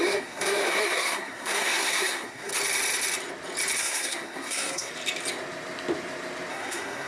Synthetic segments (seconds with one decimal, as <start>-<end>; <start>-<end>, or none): 0.0-2.5; 3.8-4.9; 6.5-7.1

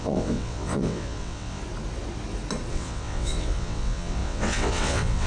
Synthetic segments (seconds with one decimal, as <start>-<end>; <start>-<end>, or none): 0.0-1.6; 2.7-5.3

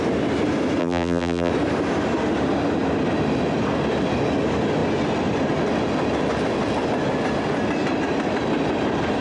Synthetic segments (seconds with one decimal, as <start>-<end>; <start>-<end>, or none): 0.8-1.5

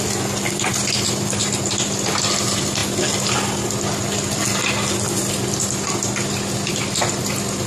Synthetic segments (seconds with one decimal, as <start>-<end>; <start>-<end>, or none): none

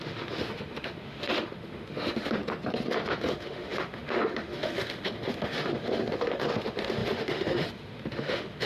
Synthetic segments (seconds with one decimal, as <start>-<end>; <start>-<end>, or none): 0.0-2.4; 3.3-8.7